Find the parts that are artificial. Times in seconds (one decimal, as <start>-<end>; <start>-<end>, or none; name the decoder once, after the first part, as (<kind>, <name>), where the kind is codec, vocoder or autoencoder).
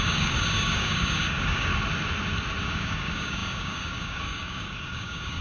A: 0.0-1.7 (codec, DAC); 2.6-5.4